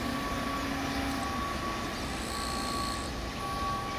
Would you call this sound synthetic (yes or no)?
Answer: no